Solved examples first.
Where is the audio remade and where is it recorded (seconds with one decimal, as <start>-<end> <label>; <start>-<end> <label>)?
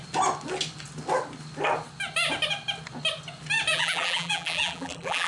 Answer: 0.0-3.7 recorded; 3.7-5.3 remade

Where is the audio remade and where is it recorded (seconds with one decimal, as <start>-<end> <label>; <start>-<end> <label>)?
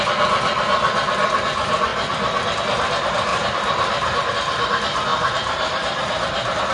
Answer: 0.0-3.3 recorded; 3.3-4.3 remade; 4.3-5.1 recorded; 5.1-6.7 remade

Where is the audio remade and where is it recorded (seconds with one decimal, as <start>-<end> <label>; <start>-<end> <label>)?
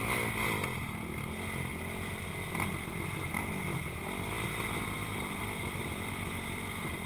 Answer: 0.0-3.7 recorded; 3.7-4.3 remade; 4.3-5.4 recorded; 5.4-7.1 remade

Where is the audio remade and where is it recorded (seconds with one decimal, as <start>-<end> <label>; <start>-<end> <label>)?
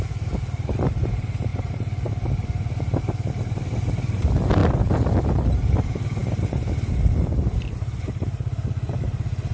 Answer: 0.0-1.5 remade; 1.5-2.1 recorded; 2.1-4.6 remade; 4.6-5.5 recorded; 5.5-9.5 remade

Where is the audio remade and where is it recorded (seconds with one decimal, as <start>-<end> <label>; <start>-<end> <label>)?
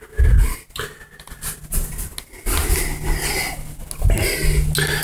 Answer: 0.0-5.0 recorded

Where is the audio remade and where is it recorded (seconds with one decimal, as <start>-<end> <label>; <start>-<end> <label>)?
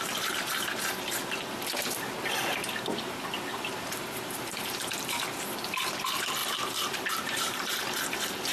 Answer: 0.0-3.5 recorded; 3.5-5.1 remade; 5.1-6.4 recorded; 6.4-8.0 remade; 8.0-8.5 recorded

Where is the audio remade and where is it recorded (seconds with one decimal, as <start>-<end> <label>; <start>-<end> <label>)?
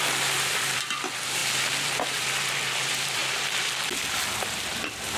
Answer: 0.0-3.2 remade; 3.2-4.1 recorded; 4.1-5.2 remade